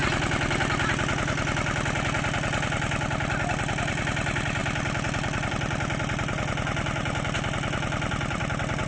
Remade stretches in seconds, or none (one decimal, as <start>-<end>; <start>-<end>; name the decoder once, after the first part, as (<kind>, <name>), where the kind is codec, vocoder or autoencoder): 0.0-8.9 (vocoder, BigVGAN v2)